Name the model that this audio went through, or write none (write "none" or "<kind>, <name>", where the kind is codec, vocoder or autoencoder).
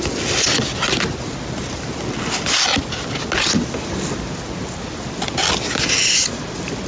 none